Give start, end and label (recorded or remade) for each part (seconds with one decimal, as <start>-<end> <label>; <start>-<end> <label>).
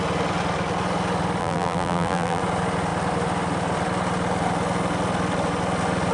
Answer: 0.0-1.4 recorded; 1.4-2.4 remade; 2.4-6.1 recorded